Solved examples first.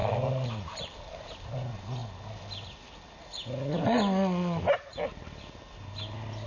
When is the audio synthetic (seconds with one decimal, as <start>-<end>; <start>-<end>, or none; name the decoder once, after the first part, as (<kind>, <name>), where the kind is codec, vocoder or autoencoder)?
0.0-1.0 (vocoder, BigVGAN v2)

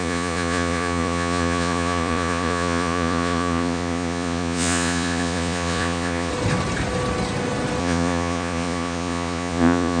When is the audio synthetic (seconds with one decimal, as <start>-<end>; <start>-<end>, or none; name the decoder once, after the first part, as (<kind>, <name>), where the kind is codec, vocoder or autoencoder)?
0.0-6.3 (vocoder, Vocos); 7.8-10.0

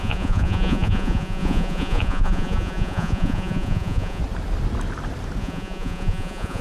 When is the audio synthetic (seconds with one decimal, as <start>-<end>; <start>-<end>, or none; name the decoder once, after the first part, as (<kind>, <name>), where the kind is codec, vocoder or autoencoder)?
0.0-4.2 (vocoder, Vocos); 5.4-6.6

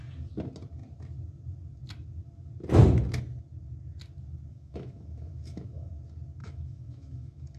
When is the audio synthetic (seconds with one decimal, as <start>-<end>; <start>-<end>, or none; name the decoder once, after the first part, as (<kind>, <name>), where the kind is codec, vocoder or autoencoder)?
4.5-5.9 (autoencoder, DAC-VAE); 6.4-7.6

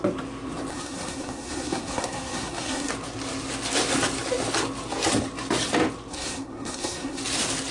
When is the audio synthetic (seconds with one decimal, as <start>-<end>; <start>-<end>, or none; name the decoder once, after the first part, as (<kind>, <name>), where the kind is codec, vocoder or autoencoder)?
0.7-2.9 (codec, SNAC); 6.1-7.2

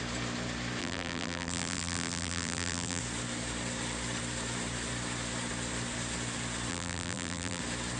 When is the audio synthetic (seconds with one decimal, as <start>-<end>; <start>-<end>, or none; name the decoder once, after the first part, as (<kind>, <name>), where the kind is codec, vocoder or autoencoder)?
0.8-3.0 (vocoder, BigVGAN v2); 6.7-7.6

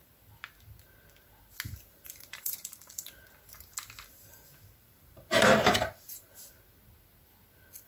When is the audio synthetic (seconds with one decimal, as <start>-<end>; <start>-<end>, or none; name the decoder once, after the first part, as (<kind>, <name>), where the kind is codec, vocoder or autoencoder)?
1.9-3.1 (vocoder, BigVGAN v2); 4.8-6.4